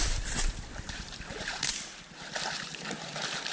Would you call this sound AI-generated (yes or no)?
yes